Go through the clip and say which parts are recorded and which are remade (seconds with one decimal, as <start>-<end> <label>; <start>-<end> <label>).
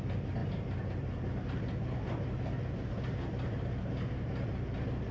0.0-5.1 recorded